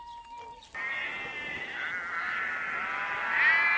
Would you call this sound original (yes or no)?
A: yes